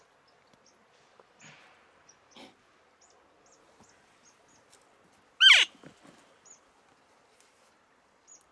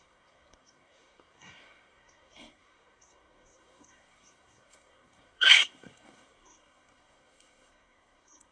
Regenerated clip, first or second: second